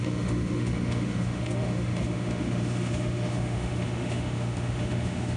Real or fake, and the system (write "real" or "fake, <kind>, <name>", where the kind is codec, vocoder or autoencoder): fake, autoencoder, DAC-VAE